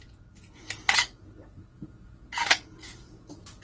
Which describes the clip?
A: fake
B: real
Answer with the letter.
A